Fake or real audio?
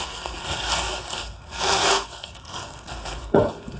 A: fake